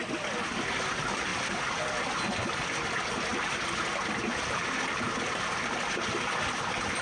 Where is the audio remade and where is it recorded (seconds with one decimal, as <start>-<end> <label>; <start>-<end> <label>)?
0.0-7.0 recorded